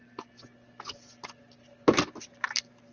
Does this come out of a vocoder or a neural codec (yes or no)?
no